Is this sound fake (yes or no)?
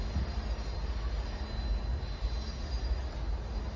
no